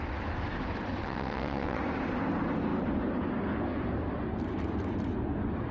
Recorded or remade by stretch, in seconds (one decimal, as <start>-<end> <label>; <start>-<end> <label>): 0.0-1.0 recorded; 1.0-1.8 remade; 1.8-5.7 recorded

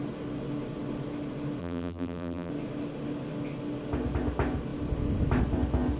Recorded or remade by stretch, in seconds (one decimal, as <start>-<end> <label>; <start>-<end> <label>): 0.0-1.6 recorded; 1.6-2.5 remade; 2.5-6.0 recorded

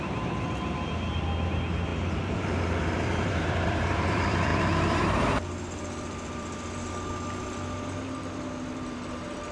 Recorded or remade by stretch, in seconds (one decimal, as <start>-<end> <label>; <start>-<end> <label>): 0.0-9.5 remade